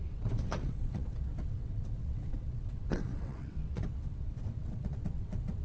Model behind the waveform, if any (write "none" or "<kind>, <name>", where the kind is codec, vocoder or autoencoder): vocoder, WaveNeXt